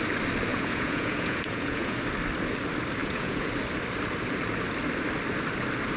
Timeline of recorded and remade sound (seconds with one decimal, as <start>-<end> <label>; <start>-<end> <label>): 0.0-0.5 recorded; 0.5-2.0 remade; 2.0-3.0 recorded; 3.0-3.5 remade; 3.5-6.0 recorded